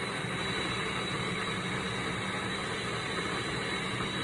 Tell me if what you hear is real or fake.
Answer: real